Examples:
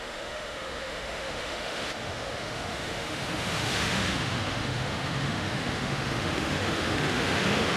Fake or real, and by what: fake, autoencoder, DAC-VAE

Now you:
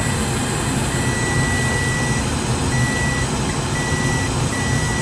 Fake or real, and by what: real